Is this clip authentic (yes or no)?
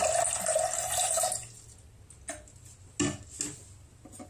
yes